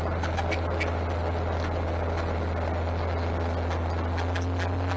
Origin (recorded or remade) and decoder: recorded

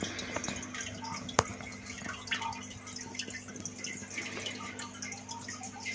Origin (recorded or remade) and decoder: recorded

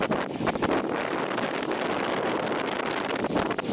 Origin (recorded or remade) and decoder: recorded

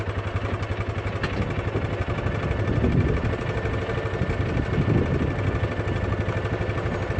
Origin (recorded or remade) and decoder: recorded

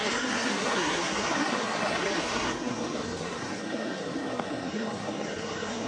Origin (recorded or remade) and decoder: remade, codec, SNAC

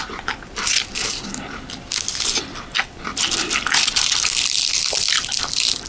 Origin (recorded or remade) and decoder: recorded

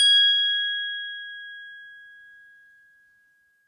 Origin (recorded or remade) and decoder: recorded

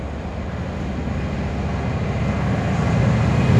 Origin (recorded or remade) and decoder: recorded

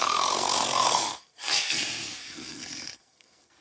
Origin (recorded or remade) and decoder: remade, codec, SNAC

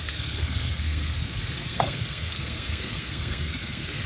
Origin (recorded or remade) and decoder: remade, codec, SNAC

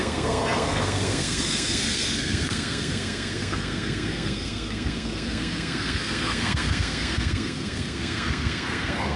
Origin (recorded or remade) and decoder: remade, codec, SNAC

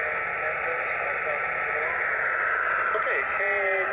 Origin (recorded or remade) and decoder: recorded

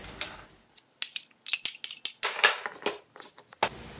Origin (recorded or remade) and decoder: recorded